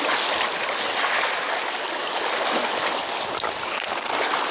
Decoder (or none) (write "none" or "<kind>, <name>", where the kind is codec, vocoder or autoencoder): none